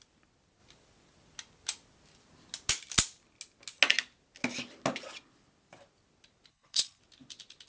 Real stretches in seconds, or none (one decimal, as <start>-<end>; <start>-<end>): 0.0-6.5; 7.0-7.7